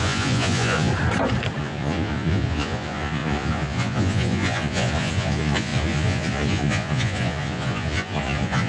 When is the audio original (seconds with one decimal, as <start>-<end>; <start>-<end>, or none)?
0.9-1.6